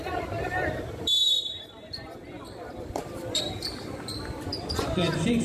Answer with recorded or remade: remade